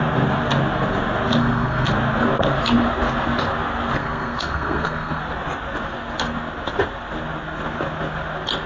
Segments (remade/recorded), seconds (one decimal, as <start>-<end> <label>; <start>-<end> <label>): 0.0-1.4 recorded; 1.4-1.9 remade; 1.9-4.0 recorded; 4.0-5.2 remade; 5.2-8.7 recorded